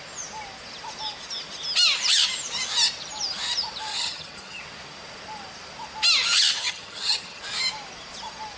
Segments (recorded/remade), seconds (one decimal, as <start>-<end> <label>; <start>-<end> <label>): 0.0-3.9 recorded; 3.9-4.6 remade; 4.6-6.6 recorded; 6.6-7.4 remade; 7.4-8.6 recorded